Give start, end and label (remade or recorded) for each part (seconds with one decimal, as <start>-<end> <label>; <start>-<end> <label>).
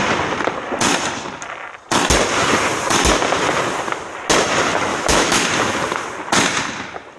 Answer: 0.0-4.9 recorded; 4.9-5.5 remade; 5.5-7.2 recorded